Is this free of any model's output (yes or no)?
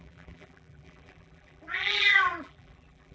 no